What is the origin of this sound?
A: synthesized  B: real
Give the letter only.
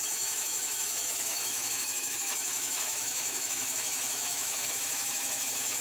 A